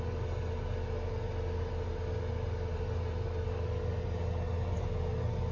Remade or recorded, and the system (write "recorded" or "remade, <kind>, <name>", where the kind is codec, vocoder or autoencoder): recorded